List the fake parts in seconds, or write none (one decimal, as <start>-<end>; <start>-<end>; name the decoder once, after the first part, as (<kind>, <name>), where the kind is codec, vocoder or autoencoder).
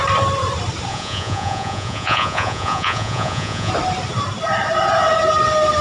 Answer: 0.9-3.7 (vocoder, Vocos)